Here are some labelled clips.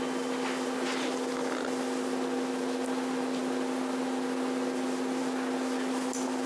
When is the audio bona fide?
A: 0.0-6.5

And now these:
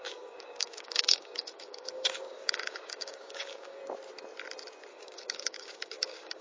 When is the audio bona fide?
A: 3.8-4.9

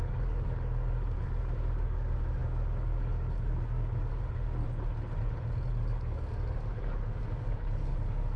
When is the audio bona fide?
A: 4.6-5.7